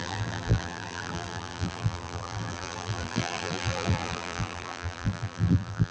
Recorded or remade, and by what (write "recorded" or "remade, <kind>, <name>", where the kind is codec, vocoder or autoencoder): remade, vocoder, BigVGAN v2